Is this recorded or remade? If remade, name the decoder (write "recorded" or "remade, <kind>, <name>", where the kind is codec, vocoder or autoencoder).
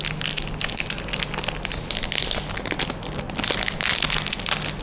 recorded